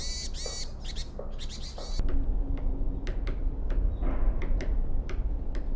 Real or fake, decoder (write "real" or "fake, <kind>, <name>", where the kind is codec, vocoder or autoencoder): real